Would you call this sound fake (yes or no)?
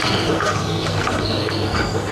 yes